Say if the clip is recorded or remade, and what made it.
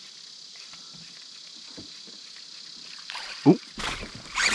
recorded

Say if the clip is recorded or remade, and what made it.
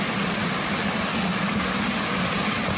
recorded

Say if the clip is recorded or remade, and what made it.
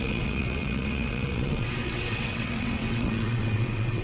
remade, vocoder, WaveNeXt